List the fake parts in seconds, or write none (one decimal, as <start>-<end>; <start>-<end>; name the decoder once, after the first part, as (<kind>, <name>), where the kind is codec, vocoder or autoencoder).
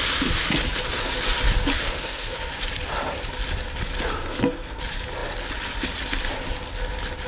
1.8-2.5 (codec, SNAC); 4.2-4.8